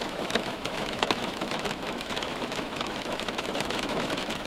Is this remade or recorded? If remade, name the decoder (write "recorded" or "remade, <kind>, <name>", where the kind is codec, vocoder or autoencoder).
remade, autoencoder, DAC-VAE